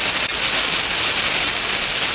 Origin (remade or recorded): recorded